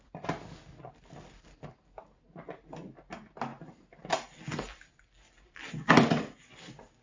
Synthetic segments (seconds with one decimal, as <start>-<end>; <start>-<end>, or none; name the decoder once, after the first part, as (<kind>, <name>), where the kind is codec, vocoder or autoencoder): none